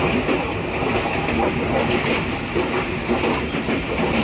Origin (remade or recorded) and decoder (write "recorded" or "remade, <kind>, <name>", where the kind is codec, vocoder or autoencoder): recorded